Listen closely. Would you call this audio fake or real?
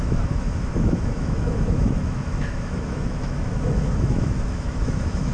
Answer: fake